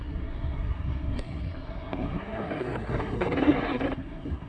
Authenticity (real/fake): fake